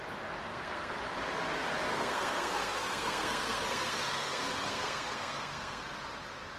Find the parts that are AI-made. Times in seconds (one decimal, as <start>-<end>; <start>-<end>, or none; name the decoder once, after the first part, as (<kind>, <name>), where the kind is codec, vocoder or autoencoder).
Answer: 0.5-1.0 (codec, SNAC); 1.9-5.8